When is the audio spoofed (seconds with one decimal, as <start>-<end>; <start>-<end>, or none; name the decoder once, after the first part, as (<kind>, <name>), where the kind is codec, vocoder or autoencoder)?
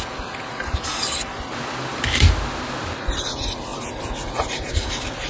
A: none